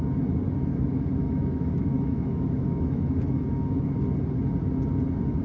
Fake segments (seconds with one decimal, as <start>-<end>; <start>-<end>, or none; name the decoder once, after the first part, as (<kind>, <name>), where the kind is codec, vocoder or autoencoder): 0.7-3.9 (autoencoder, DAC-VAE)